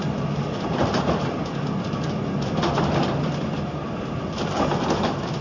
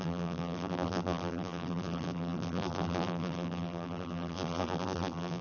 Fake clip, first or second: second